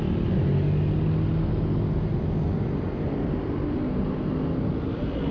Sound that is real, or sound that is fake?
real